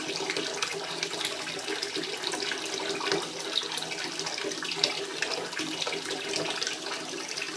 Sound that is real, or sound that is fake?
real